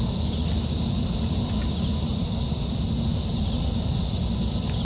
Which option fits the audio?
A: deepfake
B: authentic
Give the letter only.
B